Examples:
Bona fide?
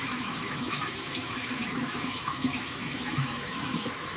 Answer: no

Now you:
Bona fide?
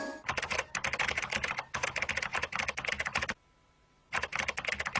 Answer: yes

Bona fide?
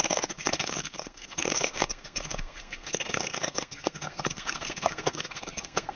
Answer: no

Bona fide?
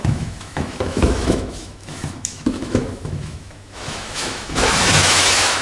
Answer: no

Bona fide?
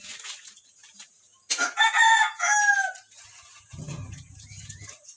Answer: yes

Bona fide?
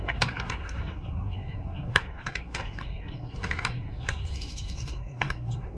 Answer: no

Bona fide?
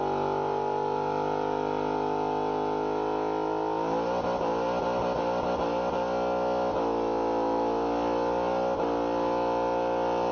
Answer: yes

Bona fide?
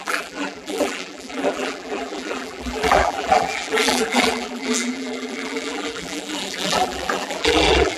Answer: no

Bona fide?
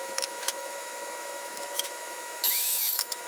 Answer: no